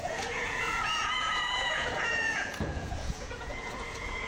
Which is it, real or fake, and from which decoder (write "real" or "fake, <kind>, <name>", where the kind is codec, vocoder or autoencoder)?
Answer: fake, vocoder, Vocos